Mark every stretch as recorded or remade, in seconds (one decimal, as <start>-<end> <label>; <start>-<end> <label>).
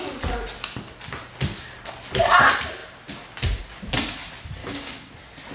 0.0-4.6 recorded; 4.6-5.1 remade; 5.1-5.5 recorded